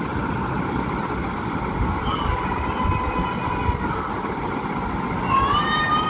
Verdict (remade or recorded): recorded